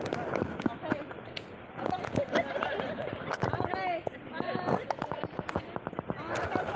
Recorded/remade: recorded